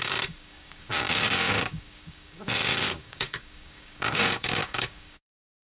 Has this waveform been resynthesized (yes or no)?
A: yes